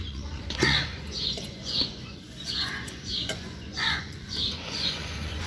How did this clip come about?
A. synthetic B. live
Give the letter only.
A